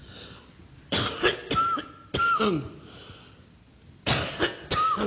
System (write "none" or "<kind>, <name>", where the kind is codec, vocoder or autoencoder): none